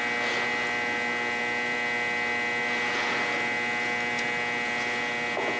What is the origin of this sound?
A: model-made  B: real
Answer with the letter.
B